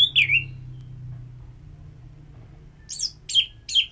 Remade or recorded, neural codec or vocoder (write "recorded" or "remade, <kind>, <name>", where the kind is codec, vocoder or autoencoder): recorded